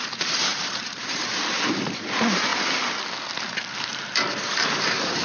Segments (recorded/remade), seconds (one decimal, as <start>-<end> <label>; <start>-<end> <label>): 0.0-2.5 remade; 2.5-4.3 recorded; 4.3-5.2 remade